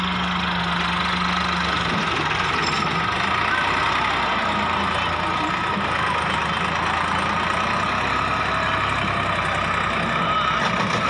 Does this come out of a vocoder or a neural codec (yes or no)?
no